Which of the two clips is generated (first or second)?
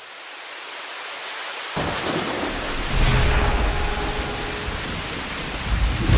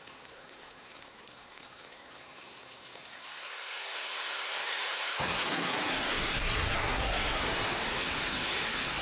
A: second